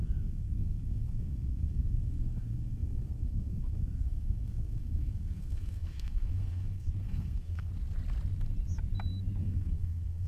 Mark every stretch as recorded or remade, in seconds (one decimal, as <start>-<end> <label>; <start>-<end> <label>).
0.0-7.7 remade; 7.7-9.4 recorded; 9.4-10.3 remade